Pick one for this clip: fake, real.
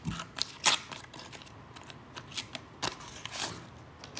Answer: real